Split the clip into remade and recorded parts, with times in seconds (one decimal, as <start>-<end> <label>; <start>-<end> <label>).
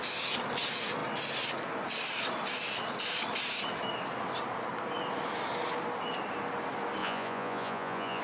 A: 0.0-7.0 recorded; 7.0-8.2 remade